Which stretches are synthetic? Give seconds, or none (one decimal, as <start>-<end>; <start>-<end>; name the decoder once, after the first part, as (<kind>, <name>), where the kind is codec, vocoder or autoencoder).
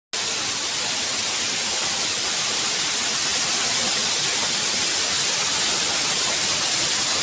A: 1.8-2.6 (vocoder, BigVGAN v2); 3.3-6.3